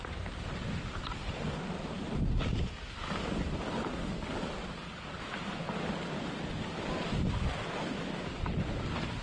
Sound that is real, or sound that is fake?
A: real